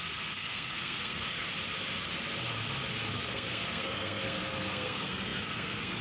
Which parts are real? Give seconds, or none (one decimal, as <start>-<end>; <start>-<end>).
1.5-3.1